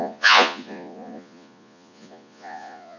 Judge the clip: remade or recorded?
remade